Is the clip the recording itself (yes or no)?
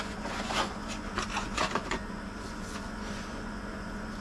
no